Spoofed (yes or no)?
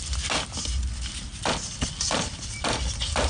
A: no